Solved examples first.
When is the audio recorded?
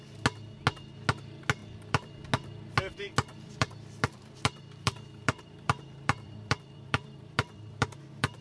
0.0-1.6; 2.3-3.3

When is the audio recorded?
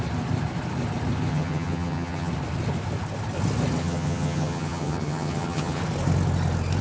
0.0-1.3; 2.3-3.8; 5.8-6.8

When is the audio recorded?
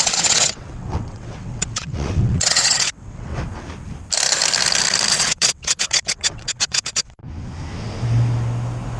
3.3-5.1; 7.2-9.0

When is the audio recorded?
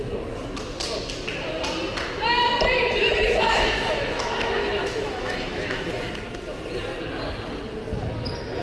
0.0-3.0; 5.9-8.6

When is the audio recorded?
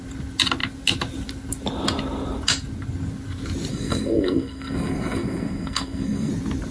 0.0-3.7; 6.3-6.7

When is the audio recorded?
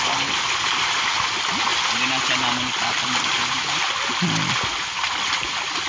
0.0-5.9